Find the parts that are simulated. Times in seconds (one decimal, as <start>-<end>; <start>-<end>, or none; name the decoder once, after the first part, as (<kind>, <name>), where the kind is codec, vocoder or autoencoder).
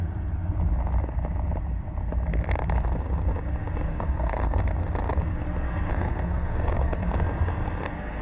3.9-4.6 (codec, SNAC); 5.9-7.1